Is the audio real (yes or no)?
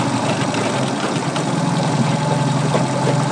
yes